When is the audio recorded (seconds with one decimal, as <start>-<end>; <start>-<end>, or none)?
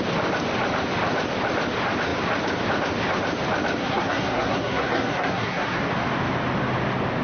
0.0-3.8; 5.9-7.2